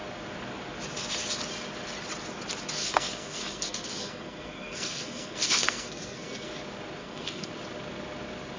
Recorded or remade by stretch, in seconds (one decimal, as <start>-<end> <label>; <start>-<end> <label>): 0.0-2.8 recorded; 2.8-6.5 remade; 6.5-7.0 recorded; 7.0-7.5 remade; 7.5-8.6 recorded